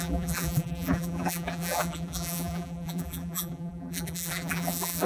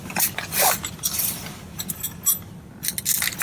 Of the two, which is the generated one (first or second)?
first